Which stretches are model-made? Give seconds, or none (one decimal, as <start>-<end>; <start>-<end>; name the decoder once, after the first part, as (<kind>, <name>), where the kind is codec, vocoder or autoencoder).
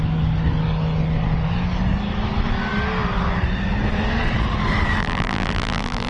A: 5.0-6.1 (vocoder, BigVGAN v2)